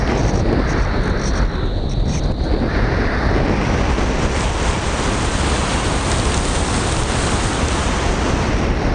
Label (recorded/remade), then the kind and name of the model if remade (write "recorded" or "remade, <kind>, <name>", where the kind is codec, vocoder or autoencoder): recorded